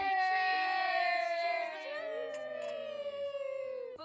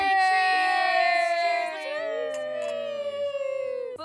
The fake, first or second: first